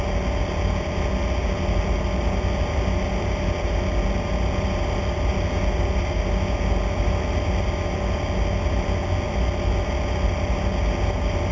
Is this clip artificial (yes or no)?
no